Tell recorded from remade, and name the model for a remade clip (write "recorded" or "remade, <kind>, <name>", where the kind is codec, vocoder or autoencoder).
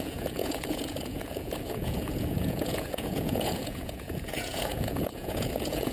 remade, vocoder, Vocos